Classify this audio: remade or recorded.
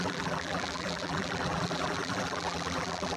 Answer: remade